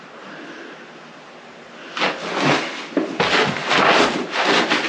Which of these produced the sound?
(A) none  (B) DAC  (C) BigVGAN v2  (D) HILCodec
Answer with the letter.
A